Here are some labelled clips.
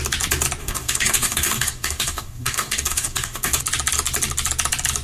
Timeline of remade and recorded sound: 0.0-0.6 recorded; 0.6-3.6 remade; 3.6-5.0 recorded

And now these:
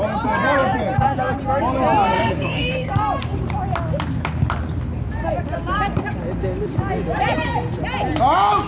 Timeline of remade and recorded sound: 0.0-2.1 recorded; 2.1-2.9 remade; 2.9-8.7 recorded

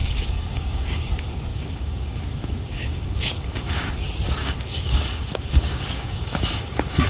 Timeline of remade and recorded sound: 0.0-1.1 remade; 1.1-1.5 recorded; 1.5-3.9 remade; 3.9-4.4 recorded; 4.4-7.1 remade

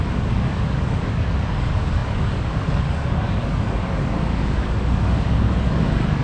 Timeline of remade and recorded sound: 0.0-6.2 remade

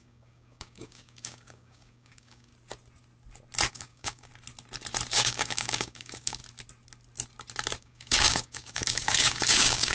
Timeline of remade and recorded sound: 0.0-2.5 remade; 2.5-3.7 recorded; 3.7-4.3 remade; 4.3-5.1 recorded; 5.1-6.4 remade; 6.4-7.8 recorded; 7.8-9.9 remade